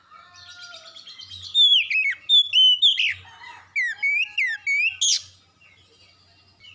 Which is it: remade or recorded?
recorded